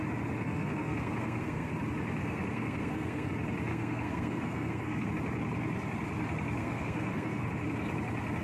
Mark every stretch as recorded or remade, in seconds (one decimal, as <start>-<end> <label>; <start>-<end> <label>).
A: 0.0-0.4 recorded; 0.4-1.7 remade; 1.7-2.2 recorded; 2.2-3.3 remade; 3.3-3.7 recorded; 3.7-5.1 remade; 5.1-6.6 recorded; 6.6-7.4 remade; 7.4-8.4 recorded